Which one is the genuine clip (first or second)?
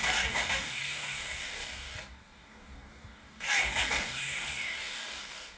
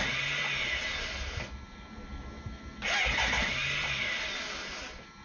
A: second